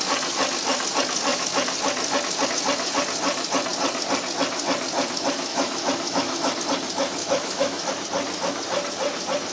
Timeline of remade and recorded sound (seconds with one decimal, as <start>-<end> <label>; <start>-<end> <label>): 0.0-5.5 recorded; 5.5-6.6 remade; 6.6-7.2 recorded; 7.2-7.9 remade; 7.9-9.5 recorded